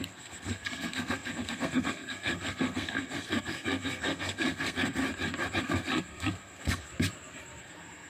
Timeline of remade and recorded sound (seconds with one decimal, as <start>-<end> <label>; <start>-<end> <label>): 0.0-5.0 remade; 5.0-5.6 recorded; 5.6-6.9 remade; 6.9-7.6 recorded; 7.6-8.1 remade